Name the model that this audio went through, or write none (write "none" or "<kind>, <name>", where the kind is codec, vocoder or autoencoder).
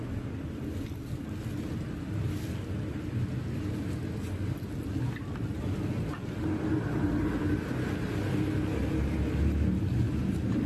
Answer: none